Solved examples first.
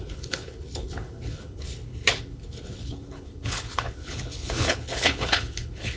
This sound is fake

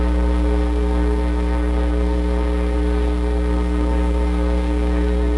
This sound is fake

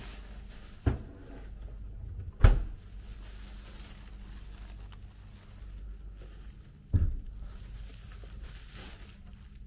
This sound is real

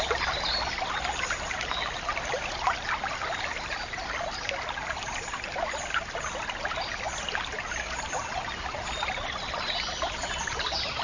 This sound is real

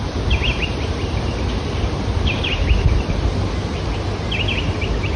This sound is real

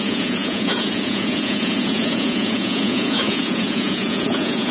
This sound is fake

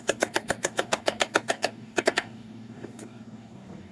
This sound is fake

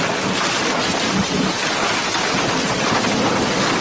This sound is real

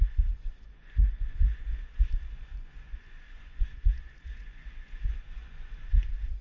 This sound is fake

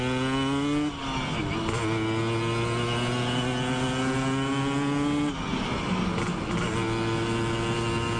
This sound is real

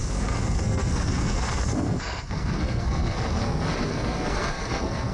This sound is fake